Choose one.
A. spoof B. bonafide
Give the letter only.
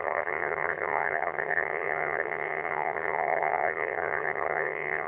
A